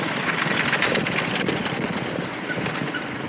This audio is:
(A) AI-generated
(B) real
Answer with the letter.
B